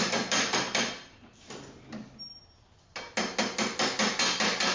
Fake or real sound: real